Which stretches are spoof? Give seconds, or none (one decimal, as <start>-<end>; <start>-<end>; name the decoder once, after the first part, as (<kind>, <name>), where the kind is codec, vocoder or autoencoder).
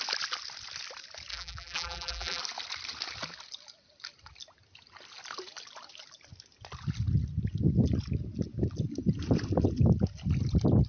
1.3-2.4 (vocoder, BigVGAN v2)